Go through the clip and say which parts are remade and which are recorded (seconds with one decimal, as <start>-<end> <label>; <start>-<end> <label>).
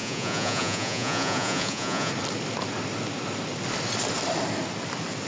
0.0-2.1 remade; 2.1-5.3 recorded